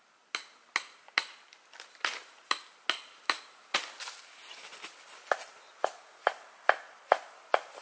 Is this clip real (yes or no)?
yes